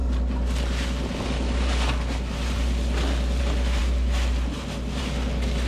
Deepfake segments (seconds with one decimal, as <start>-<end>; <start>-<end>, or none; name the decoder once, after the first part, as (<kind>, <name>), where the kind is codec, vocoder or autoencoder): none